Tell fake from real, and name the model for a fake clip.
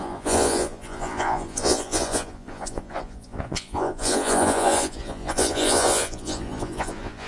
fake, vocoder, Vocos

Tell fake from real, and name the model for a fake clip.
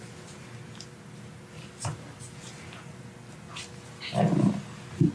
real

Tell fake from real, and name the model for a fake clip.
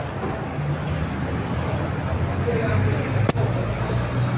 real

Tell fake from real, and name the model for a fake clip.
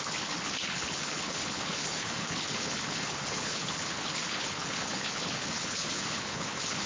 fake, codec, HILCodec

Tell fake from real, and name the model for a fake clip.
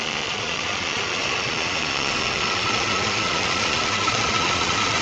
fake, vocoder, Vocos